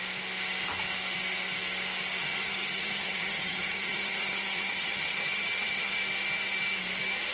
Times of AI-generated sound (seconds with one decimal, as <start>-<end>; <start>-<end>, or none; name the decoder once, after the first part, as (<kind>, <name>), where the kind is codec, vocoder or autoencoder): 2.2-6.0 (vocoder, HiFi-GAN)

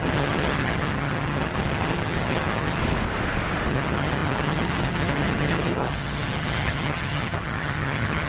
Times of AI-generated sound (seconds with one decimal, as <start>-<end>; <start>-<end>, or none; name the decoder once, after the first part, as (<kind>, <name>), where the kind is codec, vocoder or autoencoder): 0.0-2.8 (vocoder, HiFi-GAN); 3.7-8.3

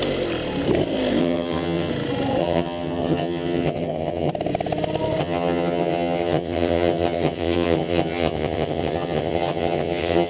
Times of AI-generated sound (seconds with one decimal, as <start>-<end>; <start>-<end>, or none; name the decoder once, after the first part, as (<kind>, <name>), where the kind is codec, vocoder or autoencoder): 1.2-1.9 (vocoder, HiFi-GAN); 2.4-4.3; 5.2-10.3

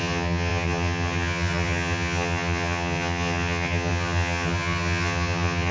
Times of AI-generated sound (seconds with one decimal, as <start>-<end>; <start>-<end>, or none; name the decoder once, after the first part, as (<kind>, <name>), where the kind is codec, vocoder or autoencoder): 0.0-5.7 (vocoder, HiFi-GAN)

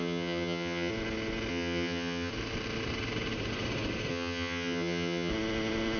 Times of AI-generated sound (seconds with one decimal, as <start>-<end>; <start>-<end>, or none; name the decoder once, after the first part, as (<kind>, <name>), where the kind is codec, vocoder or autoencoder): 0.0-0.9 (vocoder, HiFi-GAN); 1.5-2.3; 4.1-5.3

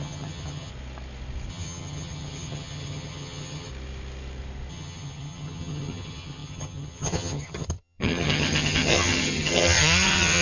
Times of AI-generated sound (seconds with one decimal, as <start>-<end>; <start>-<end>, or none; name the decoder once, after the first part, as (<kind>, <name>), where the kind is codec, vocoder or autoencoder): 0.0-0.7 (vocoder, HiFi-GAN); 1.5-3.7; 4.7-10.4